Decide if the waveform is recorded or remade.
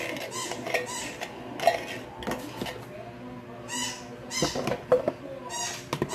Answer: recorded